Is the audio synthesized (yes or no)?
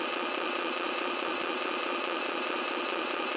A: yes